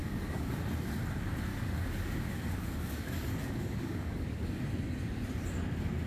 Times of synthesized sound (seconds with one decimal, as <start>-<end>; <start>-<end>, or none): 0.0-0.6; 1.5-4.6